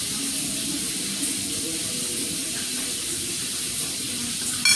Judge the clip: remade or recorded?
recorded